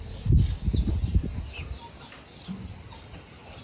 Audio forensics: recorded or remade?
recorded